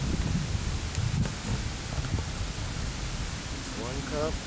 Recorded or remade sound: recorded